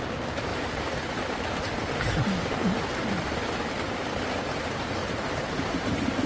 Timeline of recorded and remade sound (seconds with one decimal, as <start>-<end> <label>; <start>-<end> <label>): 0.0-2.6 recorded; 2.6-3.1 remade; 3.1-5.0 recorded; 5.0-6.3 remade